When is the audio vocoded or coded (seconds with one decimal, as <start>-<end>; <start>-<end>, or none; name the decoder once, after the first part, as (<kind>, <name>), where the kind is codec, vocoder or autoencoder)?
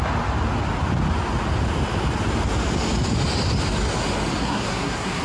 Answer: 4.4-5.2 (codec, SNAC)